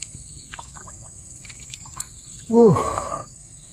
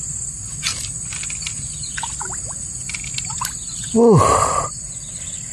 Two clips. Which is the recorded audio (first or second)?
second